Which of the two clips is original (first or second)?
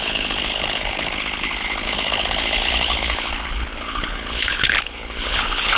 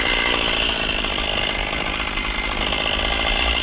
second